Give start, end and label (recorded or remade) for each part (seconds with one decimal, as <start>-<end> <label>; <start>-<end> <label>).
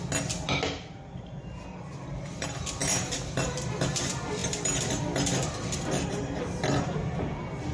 0.0-2.8 recorded; 2.8-3.9 remade; 3.9-4.4 recorded; 4.4-6.8 remade; 6.8-7.7 recorded